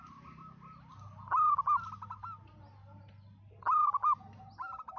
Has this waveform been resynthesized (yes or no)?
no